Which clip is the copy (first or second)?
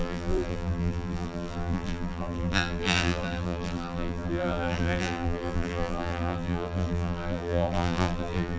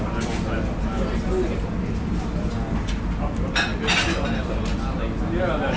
first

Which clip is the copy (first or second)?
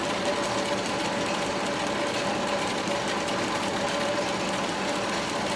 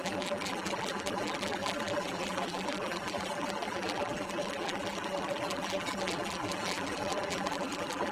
second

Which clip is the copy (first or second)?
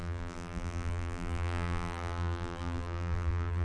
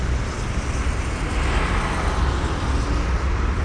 first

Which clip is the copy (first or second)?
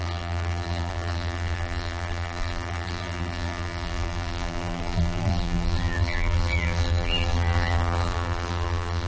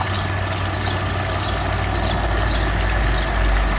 first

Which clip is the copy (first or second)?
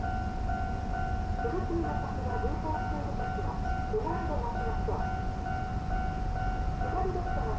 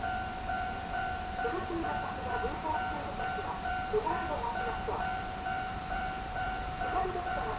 second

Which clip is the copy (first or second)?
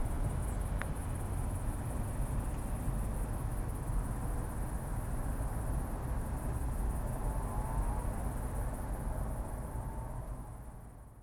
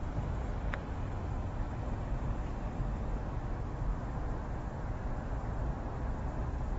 second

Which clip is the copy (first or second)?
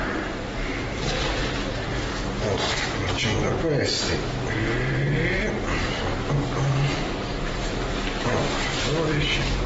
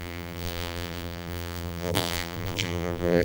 second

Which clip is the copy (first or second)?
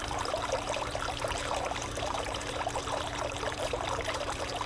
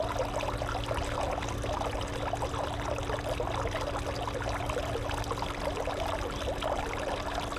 first